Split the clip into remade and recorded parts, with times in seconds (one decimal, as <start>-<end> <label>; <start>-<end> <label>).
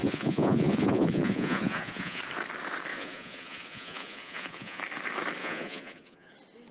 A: 0.0-2.2 remade; 2.2-2.9 recorded; 2.9-4.8 remade; 4.8-5.4 recorded; 5.4-6.3 remade; 6.3-6.7 recorded